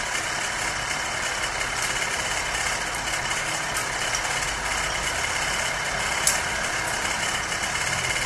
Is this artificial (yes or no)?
no